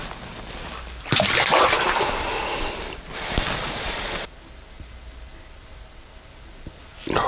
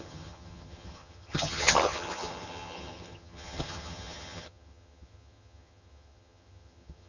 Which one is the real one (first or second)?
first